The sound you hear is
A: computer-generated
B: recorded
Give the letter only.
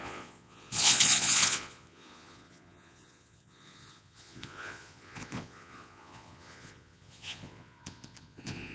A